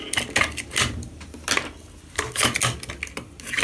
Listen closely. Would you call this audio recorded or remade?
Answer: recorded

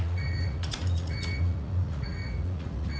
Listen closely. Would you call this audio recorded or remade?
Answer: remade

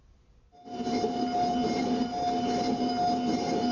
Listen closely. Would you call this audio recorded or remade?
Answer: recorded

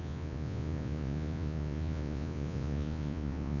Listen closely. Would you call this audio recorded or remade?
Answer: remade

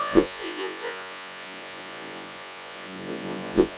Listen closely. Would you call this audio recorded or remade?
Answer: remade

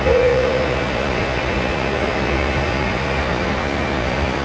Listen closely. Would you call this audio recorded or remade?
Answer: remade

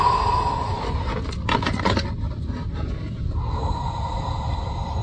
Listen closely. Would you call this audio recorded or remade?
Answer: recorded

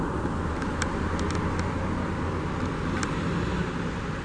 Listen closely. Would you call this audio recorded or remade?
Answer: recorded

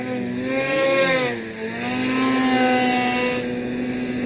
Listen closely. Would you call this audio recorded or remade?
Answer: recorded